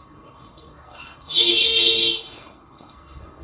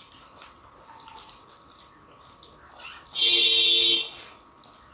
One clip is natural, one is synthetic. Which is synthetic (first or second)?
first